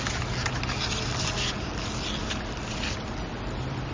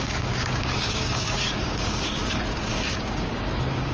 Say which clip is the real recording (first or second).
first